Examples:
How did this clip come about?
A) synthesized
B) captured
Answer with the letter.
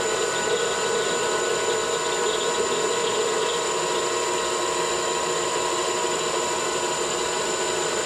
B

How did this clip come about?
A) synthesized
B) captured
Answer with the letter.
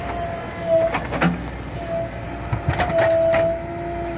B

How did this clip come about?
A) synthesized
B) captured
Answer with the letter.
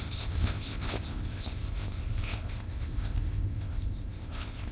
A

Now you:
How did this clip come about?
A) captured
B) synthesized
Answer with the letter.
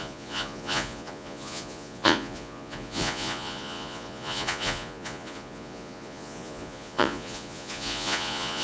B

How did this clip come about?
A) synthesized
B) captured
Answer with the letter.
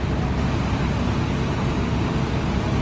B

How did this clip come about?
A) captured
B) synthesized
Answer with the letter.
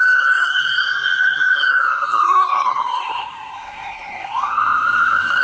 B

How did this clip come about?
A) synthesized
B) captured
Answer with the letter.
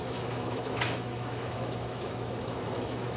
A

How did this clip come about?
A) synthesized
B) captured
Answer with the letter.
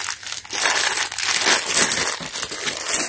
B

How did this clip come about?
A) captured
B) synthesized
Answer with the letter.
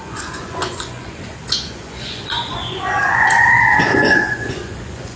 B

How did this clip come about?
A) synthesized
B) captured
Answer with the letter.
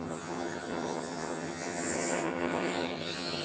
A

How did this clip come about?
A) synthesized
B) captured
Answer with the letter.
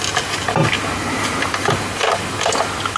B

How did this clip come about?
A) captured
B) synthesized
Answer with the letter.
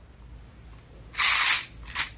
A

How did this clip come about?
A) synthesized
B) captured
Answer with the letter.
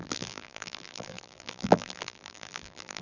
A